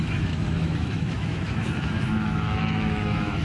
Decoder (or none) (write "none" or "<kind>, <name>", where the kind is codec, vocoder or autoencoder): autoencoder, DAC-VAE